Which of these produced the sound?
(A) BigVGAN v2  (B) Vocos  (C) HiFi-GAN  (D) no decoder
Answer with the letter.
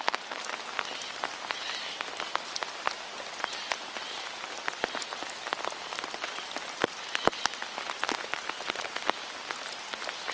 D